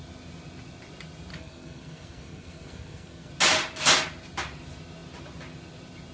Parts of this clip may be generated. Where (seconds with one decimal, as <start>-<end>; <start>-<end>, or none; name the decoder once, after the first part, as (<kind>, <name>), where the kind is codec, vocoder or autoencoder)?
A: 1.3-3.3 (codec, SNAC)